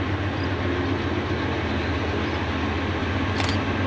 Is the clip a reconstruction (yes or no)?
no